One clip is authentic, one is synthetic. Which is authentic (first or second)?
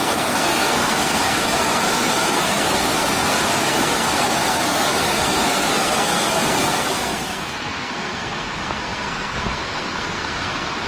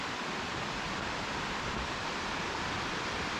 second